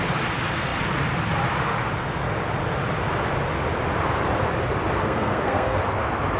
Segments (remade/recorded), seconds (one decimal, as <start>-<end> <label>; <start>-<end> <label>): 0.0-5.0 recorded; 5.0-5.8 remade; 5.8-6.4 recorded